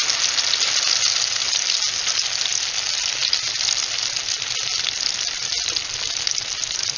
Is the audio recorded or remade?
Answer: recorded